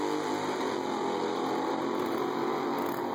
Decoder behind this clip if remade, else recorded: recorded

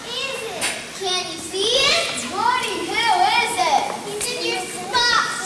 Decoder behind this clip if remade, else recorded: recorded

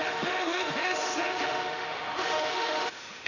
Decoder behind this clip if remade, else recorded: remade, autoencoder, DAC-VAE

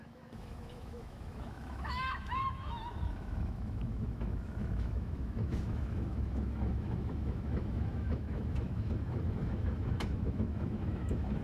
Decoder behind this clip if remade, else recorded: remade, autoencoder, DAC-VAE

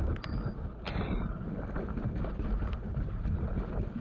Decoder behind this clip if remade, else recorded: recorded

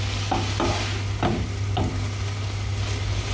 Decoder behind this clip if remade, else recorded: recorded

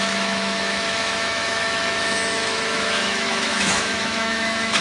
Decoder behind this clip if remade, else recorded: remade, autoencoder, DAC-VAE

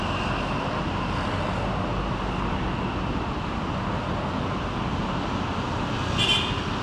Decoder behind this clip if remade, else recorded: recorded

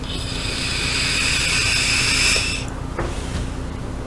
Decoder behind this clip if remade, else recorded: recorded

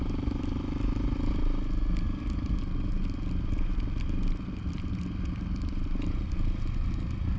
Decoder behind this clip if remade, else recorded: recorded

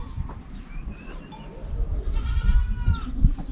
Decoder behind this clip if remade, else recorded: recorded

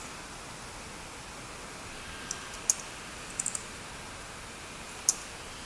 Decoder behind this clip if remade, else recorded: recorded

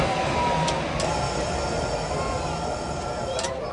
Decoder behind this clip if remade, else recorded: recorded